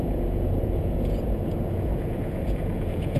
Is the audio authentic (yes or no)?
no